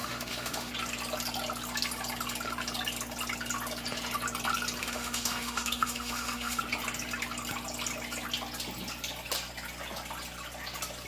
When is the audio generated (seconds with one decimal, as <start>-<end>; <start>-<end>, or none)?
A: 0.0-0.7; 4.8-6.6

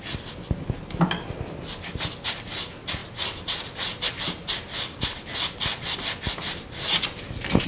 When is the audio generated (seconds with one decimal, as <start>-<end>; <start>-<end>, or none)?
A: none

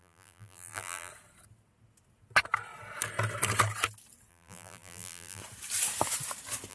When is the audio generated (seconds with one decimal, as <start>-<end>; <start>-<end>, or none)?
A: 0.0-1.1; 4.3-5.4

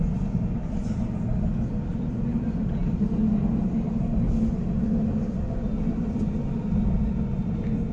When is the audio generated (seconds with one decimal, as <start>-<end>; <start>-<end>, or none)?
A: none

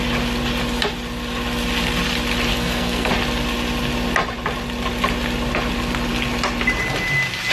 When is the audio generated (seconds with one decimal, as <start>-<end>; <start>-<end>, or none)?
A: 2.5-3.1

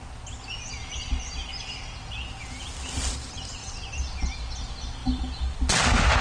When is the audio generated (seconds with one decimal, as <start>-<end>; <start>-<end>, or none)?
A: none

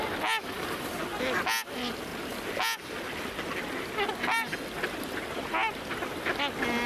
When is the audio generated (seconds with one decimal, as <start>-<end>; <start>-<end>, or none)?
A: none